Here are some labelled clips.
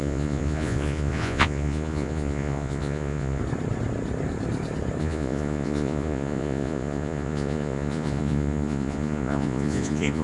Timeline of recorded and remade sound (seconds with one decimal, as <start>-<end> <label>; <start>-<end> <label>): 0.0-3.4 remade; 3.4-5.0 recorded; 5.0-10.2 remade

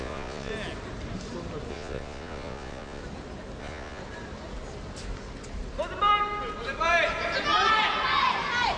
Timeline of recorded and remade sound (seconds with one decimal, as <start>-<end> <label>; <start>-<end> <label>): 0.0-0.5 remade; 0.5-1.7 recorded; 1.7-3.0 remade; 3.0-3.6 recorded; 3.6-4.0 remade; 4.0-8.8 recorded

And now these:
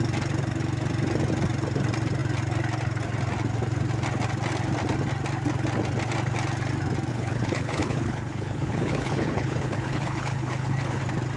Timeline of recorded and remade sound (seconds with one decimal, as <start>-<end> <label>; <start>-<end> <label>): 0.0-7.1 recorded; 7.1-11.0 remade; 11.0-11.4 recorded

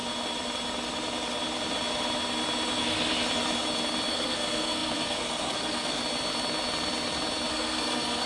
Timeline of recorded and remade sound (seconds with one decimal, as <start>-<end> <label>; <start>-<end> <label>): 0.0-4.1 recorded; 4.1-6.0 remade; 6.0-7.5 recorded; 7.5-8.3 remade